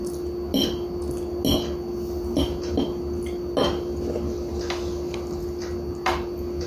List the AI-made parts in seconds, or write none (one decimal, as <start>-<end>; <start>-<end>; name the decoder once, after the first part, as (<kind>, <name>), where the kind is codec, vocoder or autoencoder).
none